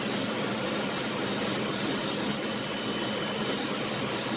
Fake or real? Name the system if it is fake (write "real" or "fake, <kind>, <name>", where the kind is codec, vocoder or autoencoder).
real